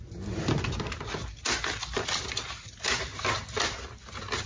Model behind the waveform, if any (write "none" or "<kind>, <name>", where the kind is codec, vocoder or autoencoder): none